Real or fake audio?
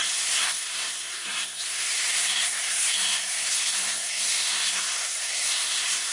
fake